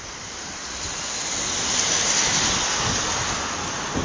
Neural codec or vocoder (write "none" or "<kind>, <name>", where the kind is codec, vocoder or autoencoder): none